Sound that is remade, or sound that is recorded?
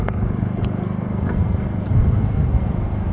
remade